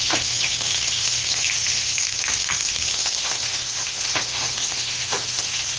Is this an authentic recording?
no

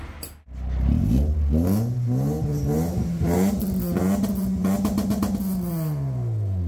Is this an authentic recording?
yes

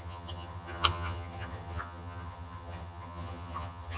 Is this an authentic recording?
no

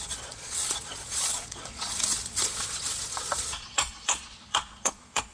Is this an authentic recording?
no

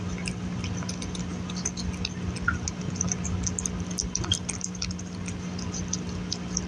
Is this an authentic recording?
yes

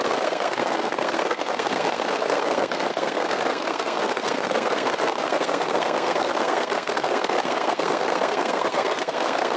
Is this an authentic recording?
no